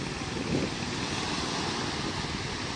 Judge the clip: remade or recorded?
recorded